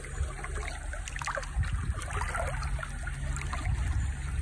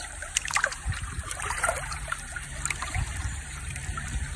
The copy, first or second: second